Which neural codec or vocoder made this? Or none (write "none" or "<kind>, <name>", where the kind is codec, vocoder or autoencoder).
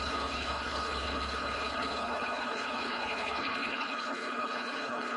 codec, HILCodec